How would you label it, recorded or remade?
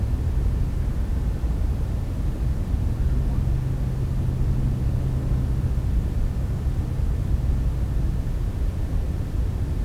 recorded